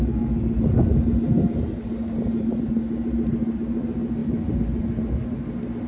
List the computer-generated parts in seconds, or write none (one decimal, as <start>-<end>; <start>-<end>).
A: none